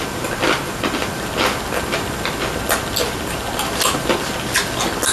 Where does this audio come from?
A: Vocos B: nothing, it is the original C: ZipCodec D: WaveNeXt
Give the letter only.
B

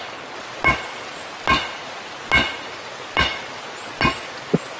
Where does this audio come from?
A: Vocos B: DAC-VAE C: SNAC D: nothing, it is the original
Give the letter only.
D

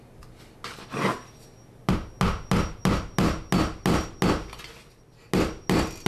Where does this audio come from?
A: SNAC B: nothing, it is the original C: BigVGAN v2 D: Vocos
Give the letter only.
B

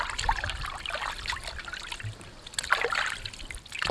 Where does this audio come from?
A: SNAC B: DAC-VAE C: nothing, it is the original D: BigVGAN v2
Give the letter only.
C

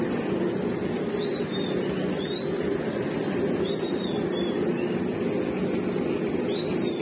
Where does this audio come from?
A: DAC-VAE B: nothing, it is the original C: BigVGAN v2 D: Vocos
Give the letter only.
B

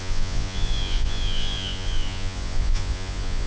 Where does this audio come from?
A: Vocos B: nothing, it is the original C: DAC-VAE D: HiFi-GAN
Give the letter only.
A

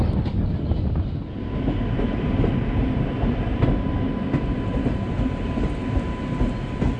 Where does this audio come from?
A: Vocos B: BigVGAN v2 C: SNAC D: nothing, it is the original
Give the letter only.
D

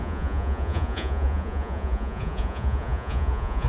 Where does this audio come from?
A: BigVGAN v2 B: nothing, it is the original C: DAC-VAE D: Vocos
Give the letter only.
D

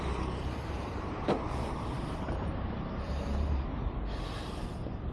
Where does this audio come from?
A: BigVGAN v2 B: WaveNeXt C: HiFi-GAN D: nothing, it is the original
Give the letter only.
A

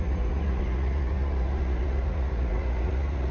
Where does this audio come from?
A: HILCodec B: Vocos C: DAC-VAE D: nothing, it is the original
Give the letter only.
B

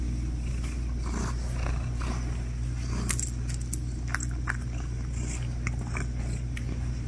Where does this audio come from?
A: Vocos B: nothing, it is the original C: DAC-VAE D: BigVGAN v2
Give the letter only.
B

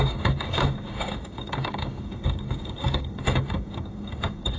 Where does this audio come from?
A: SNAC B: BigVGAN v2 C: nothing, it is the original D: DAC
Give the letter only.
D